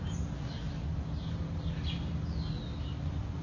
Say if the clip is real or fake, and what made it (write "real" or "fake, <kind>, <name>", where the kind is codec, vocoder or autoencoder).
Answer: real